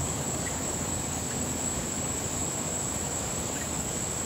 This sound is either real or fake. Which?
fake